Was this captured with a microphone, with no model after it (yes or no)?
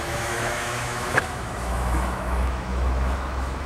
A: no